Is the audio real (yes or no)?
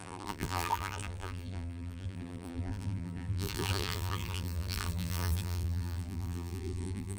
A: no